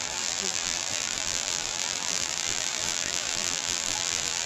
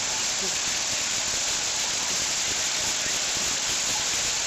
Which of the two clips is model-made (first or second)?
first